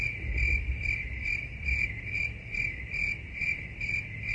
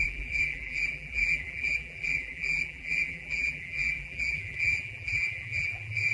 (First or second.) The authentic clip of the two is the first